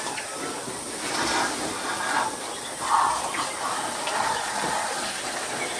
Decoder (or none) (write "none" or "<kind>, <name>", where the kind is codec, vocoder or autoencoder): none